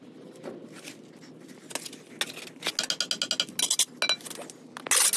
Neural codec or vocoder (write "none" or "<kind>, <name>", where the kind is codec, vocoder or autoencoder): none